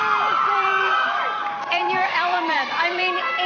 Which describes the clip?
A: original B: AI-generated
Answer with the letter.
B